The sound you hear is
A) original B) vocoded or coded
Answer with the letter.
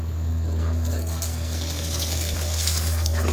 B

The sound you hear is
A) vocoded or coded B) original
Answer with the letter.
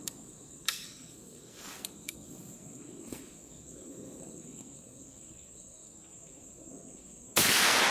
A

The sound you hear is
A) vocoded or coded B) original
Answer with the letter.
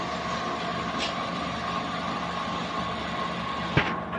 B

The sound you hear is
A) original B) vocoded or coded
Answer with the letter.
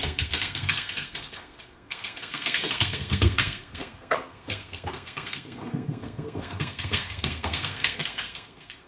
B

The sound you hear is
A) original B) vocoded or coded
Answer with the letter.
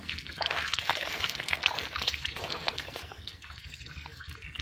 B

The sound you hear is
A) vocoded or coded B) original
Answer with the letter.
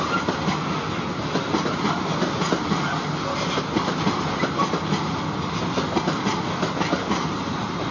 B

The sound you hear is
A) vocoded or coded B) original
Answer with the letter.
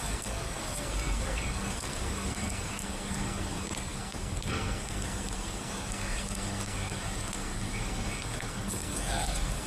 A